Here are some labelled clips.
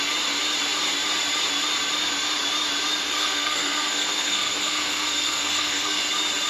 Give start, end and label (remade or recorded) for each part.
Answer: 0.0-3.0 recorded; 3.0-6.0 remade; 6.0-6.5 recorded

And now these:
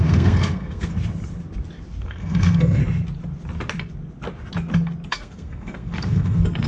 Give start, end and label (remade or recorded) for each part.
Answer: 0.0-0.9 remade; 0.9-2.0 recorded; 2.0-2.8 remade; 2.8-5.1 recorded; 5.1-6.7 remade

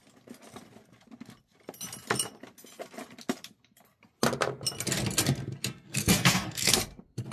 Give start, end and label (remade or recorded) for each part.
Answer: 0.0-5.9 recorded; 5.9-6.8 remade; 6.8-7.3 recorded

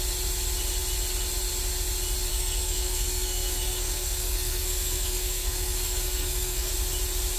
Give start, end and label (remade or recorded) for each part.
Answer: 0.0-2.3 recorded; 2.3-6.7 remade; 6.7-7.4 recorded

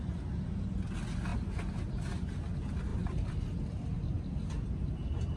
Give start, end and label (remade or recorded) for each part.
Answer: 0.0-5.4 recorded

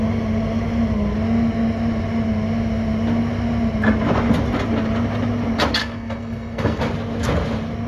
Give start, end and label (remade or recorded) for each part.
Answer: 0.0-5.8 recorded; 5.8-6.8 remade; 6.8-7.9 recorded